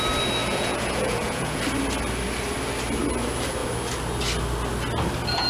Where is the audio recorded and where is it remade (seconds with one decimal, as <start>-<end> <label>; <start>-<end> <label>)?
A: 0.0-0.4 recorded; 0.4-1.6 remade; 1.6-5.5 recorded